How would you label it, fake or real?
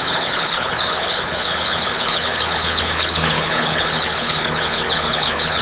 fake